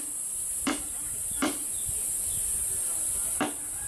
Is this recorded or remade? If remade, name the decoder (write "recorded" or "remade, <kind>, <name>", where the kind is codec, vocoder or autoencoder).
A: recorded